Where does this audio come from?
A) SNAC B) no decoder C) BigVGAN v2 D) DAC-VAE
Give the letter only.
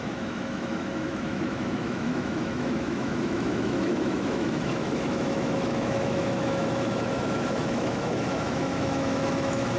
D